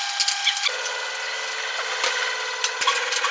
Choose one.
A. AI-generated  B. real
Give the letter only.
B